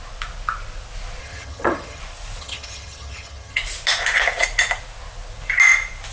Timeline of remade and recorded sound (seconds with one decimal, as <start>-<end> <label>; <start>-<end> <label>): 0.0-1.2 recorded; 1.2-2.0 remade; 2.0-2.4 recorded; 2.4-3.6 remade; 3.6-6.1 recorded